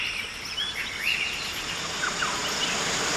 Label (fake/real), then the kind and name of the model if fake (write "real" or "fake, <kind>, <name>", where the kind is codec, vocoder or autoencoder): real